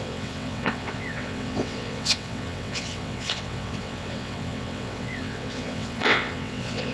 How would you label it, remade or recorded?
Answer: remade